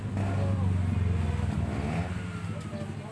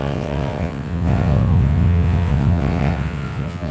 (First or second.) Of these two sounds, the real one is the first